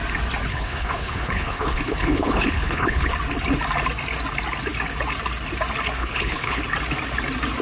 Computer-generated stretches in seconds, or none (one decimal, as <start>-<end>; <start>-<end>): 0.5-3.1; 6.0-6.6